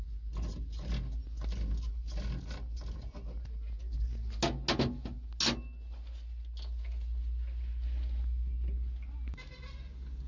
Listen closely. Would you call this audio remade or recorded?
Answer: recorded